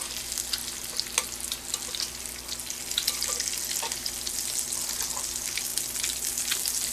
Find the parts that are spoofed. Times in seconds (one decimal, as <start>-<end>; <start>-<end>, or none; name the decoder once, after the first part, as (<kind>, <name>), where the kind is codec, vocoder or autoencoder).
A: none